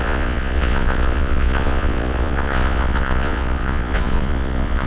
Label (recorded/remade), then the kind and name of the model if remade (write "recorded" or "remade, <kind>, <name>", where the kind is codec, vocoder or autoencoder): remade, vocoder, Vocos